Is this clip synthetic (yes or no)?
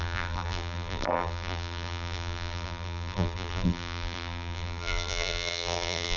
yes